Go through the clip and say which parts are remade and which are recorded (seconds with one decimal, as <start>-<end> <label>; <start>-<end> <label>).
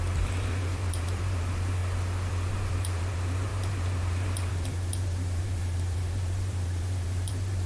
0.0-1.8 remade; 1.8-2.3 recorded; 2.3-7.7 remade